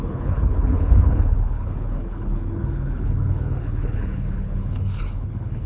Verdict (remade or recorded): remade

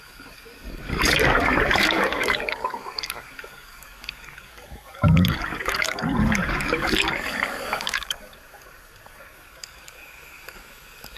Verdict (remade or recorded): remade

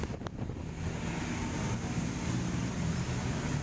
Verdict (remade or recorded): recorded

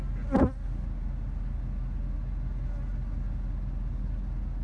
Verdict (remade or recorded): recorded